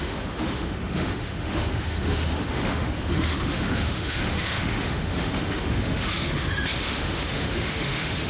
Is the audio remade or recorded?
remade